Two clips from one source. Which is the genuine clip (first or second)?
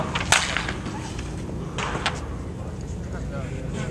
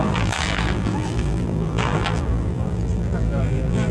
first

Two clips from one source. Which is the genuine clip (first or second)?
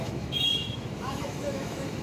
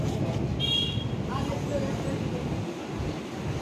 second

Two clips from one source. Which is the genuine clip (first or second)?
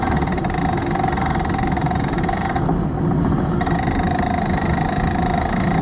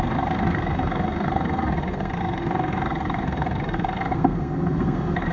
first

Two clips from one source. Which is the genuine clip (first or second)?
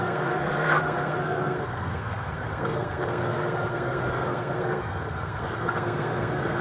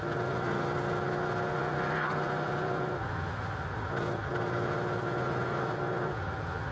second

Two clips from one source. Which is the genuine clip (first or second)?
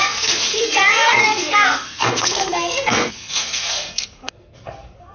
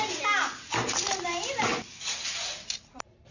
second